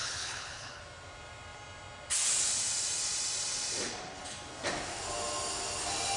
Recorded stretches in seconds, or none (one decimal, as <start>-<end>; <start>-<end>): 0.8-6.2